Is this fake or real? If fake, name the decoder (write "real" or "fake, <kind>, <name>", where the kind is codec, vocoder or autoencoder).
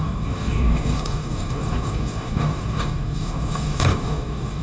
fake, codec, DAC